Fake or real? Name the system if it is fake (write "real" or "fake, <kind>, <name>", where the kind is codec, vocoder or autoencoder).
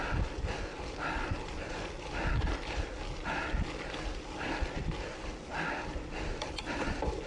real